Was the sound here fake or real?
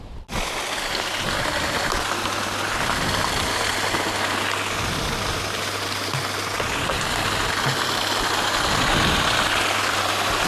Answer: real